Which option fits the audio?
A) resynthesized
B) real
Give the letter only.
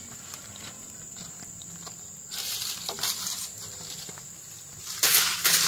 A